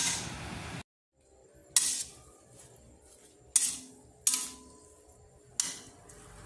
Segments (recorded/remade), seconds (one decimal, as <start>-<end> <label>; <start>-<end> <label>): 0.0-6.5 recorded